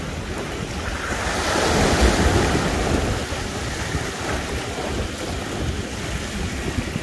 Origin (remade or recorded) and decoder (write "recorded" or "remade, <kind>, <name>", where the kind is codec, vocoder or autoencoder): recorded